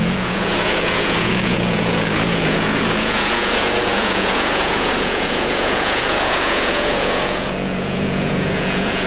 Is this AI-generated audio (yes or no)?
yes